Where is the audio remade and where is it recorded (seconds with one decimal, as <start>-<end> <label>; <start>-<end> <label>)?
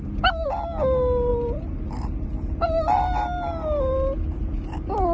0.0-5.1 recorded